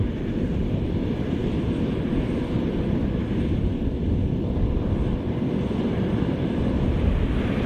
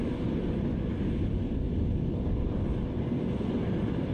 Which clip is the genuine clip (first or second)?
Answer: second